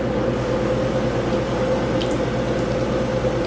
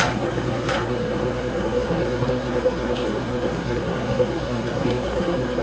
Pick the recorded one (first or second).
first